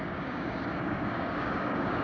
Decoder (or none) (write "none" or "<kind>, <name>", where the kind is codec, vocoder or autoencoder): codec, DAC